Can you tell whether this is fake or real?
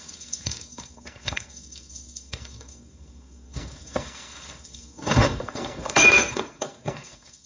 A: fake